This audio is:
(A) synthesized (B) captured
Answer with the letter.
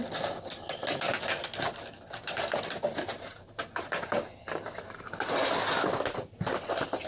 B